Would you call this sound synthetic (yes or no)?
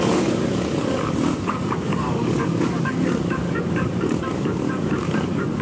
yes